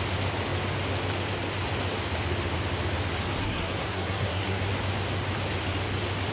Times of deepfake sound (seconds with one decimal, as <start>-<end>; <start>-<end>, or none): 3.4-4.7